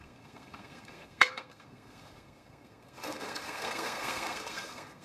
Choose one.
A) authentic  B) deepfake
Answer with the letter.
B